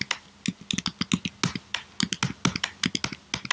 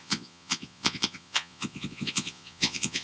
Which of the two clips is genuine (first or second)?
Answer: first